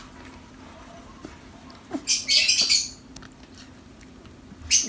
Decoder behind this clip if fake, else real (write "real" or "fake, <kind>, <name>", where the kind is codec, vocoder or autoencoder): real